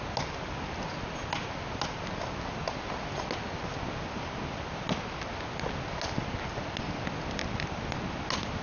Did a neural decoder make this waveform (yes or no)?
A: no